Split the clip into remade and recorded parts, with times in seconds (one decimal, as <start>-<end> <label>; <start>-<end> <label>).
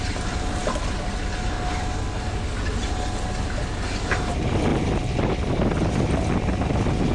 0.0-7.1 recorded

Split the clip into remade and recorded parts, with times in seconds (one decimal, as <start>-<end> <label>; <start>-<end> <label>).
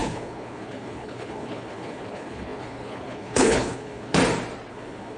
0.0-4.2 remade; 4.2-4.7 recorded; 4.7-5.2 remade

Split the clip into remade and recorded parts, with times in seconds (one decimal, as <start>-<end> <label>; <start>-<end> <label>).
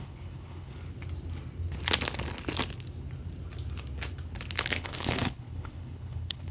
0.0-0.7 remade; 0.7-4.6 recorded; 4.6-6.5 remade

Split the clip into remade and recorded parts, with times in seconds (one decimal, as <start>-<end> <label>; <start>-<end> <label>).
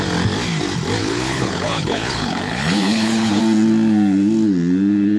0.0-1.0 recorded; 1.0-3.4 remade; 3.4-5.2 recorded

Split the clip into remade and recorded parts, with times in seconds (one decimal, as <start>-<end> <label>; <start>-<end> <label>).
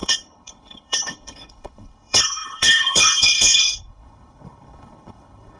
0.0-5.6 remade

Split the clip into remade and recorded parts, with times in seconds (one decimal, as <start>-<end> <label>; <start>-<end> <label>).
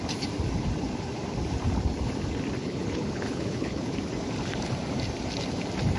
0.0-2.6 recorded; 2.6-3.9 remade; 3.9-6.0 recorded